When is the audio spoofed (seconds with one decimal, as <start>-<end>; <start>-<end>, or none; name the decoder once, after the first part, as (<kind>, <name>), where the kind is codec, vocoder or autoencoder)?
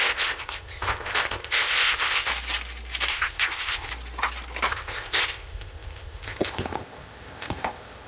0.0-2.3 (codec, ZipCodec); 3.1-3.9; 4.7-8.1